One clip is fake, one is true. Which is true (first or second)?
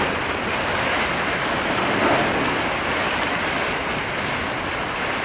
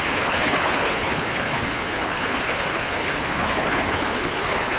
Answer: first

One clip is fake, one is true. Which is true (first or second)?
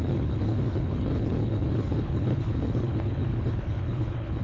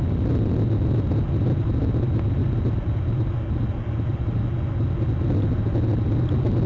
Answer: second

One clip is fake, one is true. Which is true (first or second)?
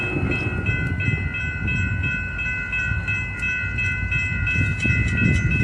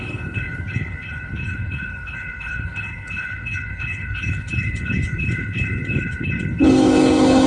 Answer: first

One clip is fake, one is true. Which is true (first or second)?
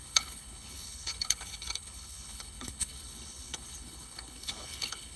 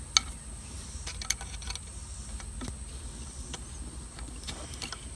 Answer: second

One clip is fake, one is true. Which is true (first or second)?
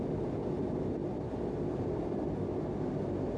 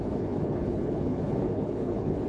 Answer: first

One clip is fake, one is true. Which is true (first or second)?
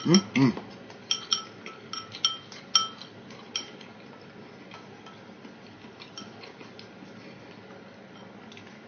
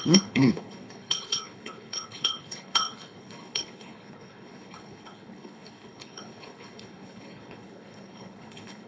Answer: first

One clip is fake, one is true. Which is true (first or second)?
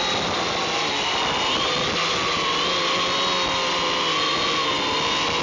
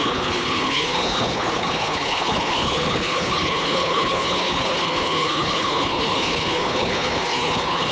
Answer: first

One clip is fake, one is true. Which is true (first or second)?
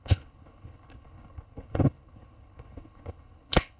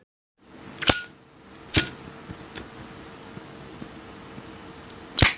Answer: second